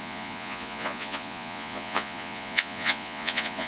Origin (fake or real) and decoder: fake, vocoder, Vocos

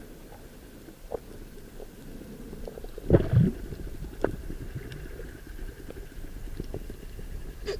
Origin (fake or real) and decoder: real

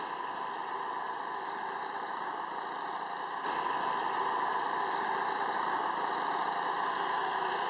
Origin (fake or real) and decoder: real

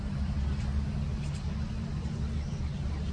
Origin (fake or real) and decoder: real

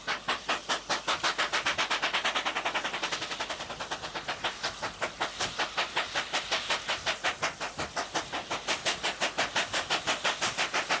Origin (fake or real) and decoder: real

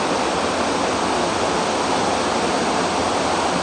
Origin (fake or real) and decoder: real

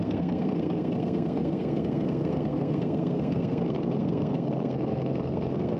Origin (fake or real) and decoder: fake, codec, SNAC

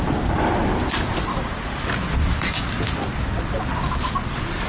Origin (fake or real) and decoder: real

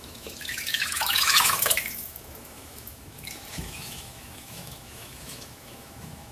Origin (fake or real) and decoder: fake, autoencoder, DAC-VAE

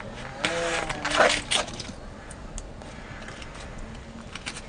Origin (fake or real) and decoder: real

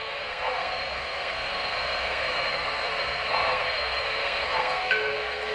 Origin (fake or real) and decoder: fake, codec, SNAC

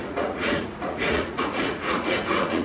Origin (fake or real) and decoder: fake, vocoder, Vocos